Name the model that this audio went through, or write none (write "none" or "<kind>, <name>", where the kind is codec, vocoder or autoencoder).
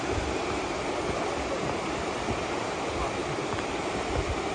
none